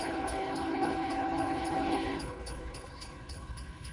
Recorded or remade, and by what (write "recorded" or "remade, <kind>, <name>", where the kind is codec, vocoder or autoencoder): remade, codec, HILCodec